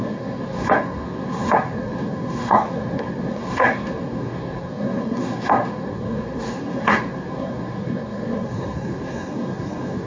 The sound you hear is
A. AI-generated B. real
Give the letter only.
A